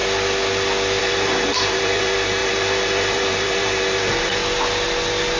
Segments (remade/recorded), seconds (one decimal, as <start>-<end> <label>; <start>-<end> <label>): 0.0-1.0 recorded; 1.0-4.4 remade; 4.4-5.4 recorded